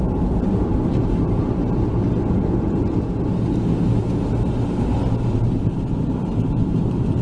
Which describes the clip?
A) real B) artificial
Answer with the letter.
A